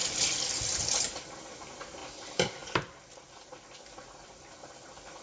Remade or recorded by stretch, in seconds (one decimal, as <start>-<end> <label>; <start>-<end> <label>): 0.0-1.2 remade; 1.2-2.0 recorded; 2.0-5.2 remade